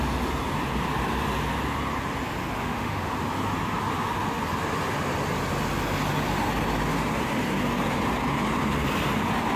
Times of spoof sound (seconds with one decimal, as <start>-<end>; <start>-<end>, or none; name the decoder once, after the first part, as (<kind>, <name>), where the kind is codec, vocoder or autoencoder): 2.6-3.1 (autoencoder, DAC-VAE)